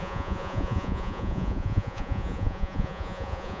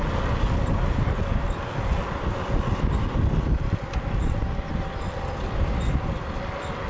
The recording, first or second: second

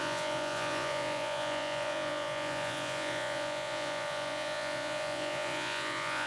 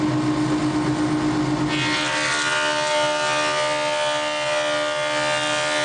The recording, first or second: second